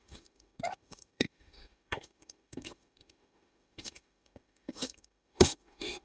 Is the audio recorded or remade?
remade